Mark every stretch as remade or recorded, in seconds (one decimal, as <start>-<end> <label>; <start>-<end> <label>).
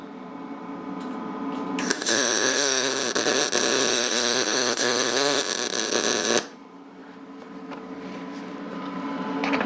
0.0-1.9 recorded; 1.9-2.9 remade; 2.9-3.9 recorded; 3.9-5.4 remade; 5.4-9.7 recorded